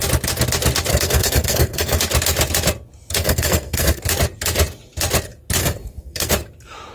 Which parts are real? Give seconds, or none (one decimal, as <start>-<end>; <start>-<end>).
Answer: 0.0-0.9; 2.0-3.2; 4.0-5.6; 6.3-6.9